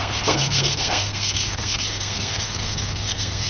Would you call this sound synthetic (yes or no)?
yes